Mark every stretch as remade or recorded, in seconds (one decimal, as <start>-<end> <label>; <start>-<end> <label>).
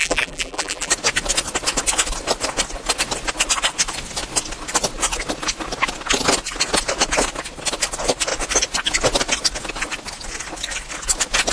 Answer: 0.0-0.9 remade; 0.9-11.5 recorded